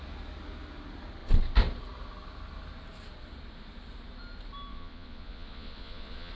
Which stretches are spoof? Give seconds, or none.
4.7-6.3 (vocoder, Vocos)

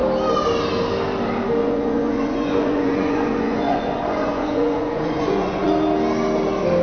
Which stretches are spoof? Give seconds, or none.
1.6-5.7 (vocoder, Vocos)

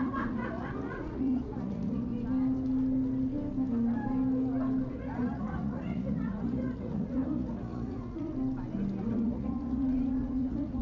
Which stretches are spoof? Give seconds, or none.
0.0-2.1 (vocoder, Vocos); 4.9-8.3; 9.0-10.8

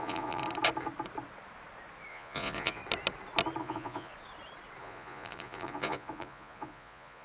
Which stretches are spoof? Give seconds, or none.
0.0-0.4 (vocoder, Vocos); 2.1-2.8; 3.6-4.1; 4.8-7.2

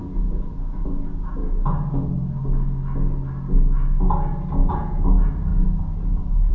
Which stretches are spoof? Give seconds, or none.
0.0-1.4 (vocoder, Vocos); 4.7-6.5

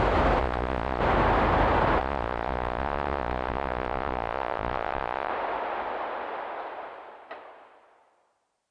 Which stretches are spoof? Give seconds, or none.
0.4-1.0 (vocoder, Vocos); 2.0-5.3

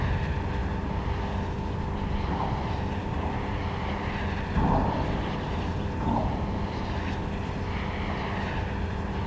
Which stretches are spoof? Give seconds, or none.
none

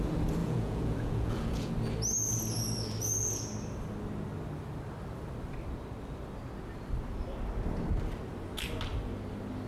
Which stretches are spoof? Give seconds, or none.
0.4-1.7 (vocoder, Vocos)